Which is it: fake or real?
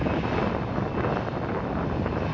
real